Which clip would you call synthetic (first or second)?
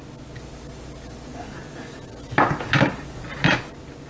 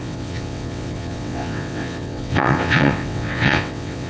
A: second